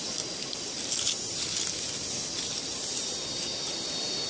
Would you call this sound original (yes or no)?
yes